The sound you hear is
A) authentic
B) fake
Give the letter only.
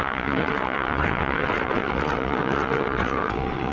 B